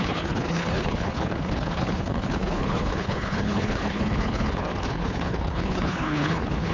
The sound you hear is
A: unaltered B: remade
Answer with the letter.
B